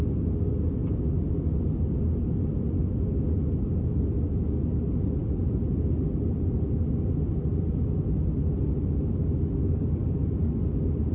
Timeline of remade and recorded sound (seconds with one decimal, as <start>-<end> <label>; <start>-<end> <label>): 0.0-11.1 recorded